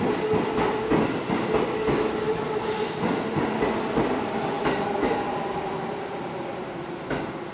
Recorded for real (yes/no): yes